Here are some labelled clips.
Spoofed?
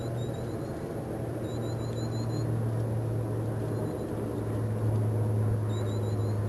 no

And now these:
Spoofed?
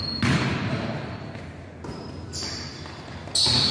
no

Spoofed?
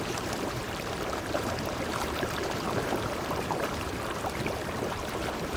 yes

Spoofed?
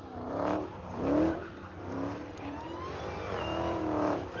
yes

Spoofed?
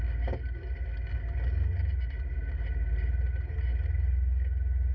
no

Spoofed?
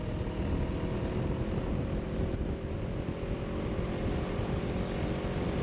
no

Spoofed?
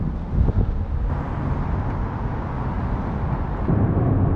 no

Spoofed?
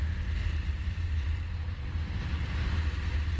no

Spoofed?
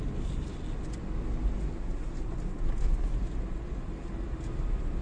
no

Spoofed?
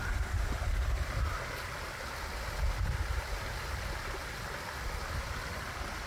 no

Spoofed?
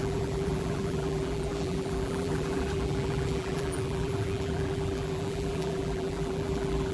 yes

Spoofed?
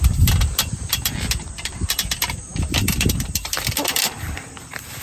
yes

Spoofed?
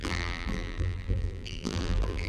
yes